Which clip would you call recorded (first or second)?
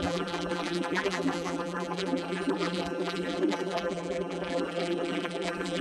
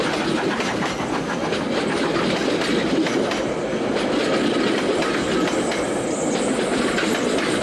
second